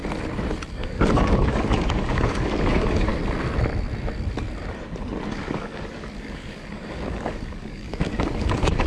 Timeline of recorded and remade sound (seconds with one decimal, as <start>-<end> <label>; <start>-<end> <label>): 0.0-0.7 recorded; 0.7-3.1 remade; 3.1-5.3 recorded; 5.3-8.9 remade